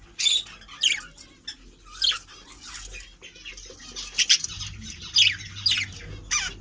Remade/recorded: recorded